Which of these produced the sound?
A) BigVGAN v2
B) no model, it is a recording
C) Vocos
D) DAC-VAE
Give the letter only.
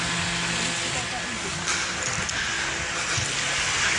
B